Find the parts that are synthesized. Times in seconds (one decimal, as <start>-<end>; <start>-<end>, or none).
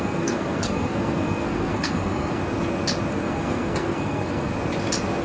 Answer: 0.0-2.4; 3.1-4.5